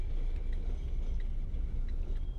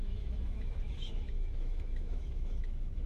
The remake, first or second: second